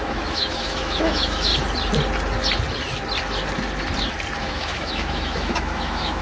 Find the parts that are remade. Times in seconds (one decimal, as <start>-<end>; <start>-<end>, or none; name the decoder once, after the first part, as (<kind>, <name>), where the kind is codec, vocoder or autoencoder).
0.0-1.5 (autoencoder, DAC-VAE); 4.4-6.2